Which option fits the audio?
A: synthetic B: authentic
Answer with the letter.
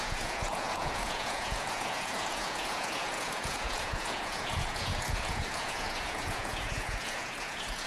A